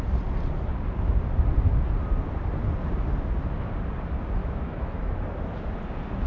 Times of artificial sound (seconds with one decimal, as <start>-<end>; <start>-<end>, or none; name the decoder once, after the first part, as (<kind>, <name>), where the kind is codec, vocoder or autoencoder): 4.4-5.1 (autoencoder, DAC-VAE)